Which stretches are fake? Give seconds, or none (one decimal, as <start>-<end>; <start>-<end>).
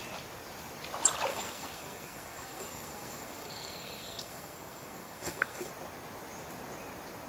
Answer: 1.3-5.7